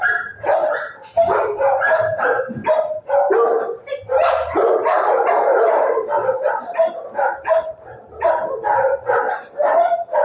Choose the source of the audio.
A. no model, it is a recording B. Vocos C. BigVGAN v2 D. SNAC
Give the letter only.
C